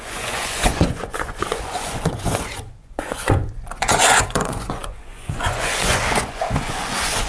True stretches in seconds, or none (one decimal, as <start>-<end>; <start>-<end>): none